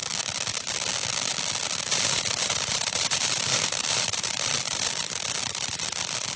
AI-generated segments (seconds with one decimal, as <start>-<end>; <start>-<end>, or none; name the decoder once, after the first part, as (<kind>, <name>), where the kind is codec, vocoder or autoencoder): 1.9-4.9 (vocoder, BigVGAN v2)